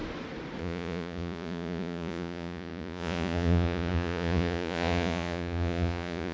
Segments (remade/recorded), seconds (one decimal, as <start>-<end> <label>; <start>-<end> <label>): 0.0-0.6 recorded; 0.6-6.3 remade